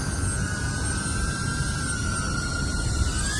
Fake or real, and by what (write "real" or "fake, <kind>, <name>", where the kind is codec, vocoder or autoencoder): real